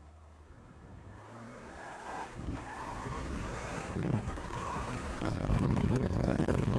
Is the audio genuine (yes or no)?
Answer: no